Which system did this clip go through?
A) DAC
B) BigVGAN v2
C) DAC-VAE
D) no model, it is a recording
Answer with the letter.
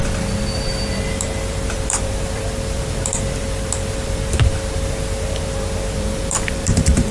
B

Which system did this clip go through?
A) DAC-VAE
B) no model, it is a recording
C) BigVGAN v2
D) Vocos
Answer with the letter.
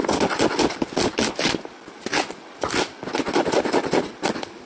B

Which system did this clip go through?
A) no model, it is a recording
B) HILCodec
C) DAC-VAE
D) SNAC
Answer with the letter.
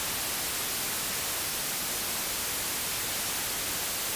A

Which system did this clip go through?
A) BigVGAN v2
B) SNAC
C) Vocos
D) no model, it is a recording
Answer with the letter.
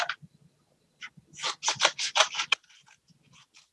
D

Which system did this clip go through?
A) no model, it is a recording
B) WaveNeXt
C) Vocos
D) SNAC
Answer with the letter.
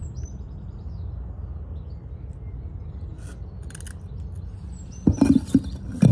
A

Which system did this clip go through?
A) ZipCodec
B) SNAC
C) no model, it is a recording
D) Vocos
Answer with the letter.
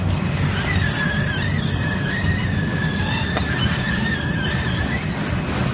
C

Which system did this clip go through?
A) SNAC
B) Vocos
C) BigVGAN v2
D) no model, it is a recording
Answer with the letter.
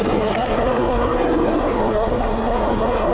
A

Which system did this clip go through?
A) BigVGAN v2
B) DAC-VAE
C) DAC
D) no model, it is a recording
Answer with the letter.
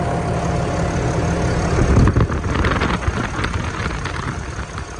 D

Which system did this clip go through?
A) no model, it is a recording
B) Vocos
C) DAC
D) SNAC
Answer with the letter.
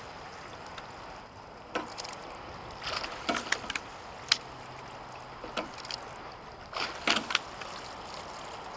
A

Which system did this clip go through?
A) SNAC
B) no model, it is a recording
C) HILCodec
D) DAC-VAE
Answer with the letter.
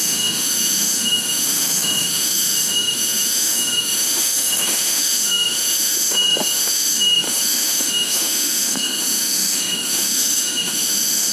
D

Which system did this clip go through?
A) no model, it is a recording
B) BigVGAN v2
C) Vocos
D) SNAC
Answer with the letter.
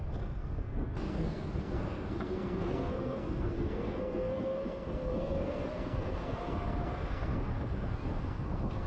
D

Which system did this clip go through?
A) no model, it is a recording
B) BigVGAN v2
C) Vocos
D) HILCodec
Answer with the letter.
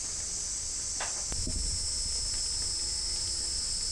A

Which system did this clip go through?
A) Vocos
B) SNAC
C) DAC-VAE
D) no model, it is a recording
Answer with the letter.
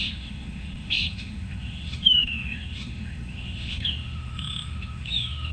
C